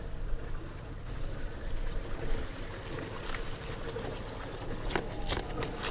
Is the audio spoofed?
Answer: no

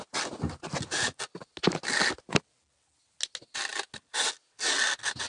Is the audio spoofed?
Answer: no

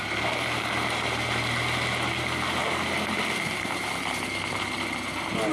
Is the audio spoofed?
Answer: no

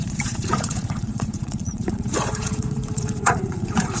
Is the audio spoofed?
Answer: yes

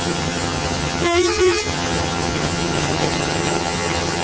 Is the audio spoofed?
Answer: yes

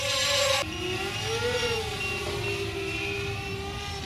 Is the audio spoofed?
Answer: no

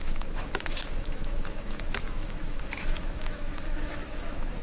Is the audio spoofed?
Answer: yes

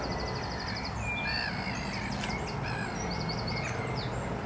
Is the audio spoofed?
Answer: no